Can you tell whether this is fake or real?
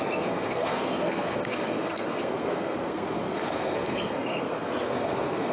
fake